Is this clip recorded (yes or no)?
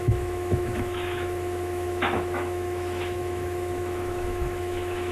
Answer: no